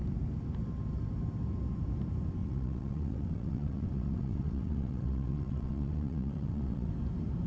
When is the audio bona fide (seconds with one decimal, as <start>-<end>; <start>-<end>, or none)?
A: 0.0-2.4; 6.9-7.5